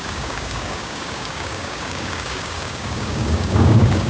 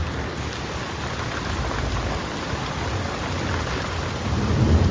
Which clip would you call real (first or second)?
second